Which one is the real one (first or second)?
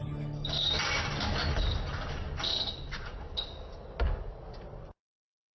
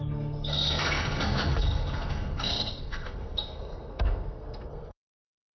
first